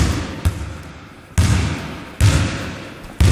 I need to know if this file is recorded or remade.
recorded